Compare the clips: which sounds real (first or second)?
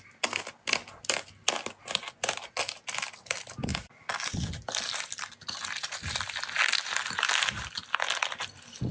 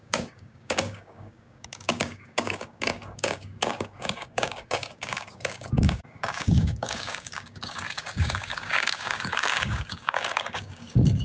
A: first